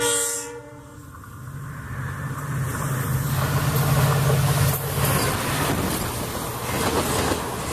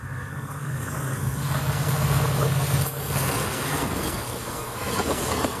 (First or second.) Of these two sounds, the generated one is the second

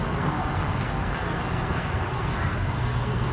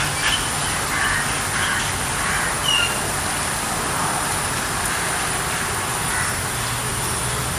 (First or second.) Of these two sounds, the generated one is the first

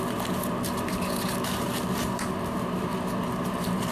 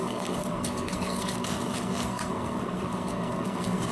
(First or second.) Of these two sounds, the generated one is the second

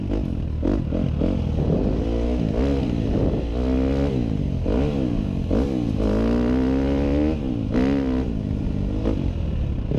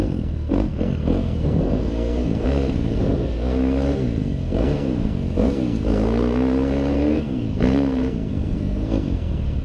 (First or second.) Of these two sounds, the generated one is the second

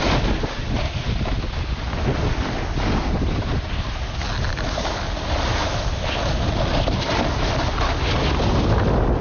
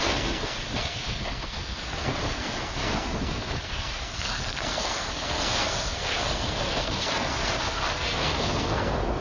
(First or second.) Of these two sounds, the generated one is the second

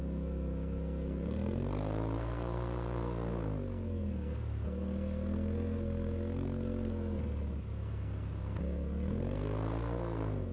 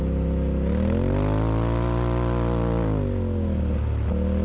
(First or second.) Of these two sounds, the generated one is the first